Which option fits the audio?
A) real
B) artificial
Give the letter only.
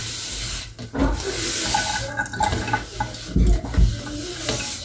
A